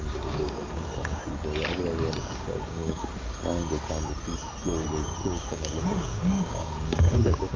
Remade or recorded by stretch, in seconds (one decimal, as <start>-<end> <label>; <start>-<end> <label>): 0.0-1.2 remade; 1.2-2.2 recorded; 2.2-3.1 remade; 3.1-5.2 recorded; 5.2-7.6 remade